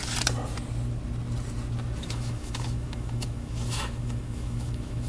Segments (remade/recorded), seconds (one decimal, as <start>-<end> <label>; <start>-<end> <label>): 0.0-2.0 recorded; 2.0-5.1 remade